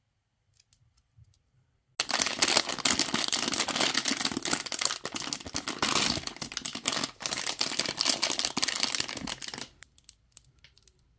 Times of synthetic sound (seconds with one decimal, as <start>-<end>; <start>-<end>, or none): none